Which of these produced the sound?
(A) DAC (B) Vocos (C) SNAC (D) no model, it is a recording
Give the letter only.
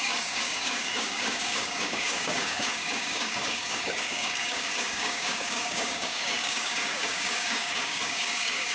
A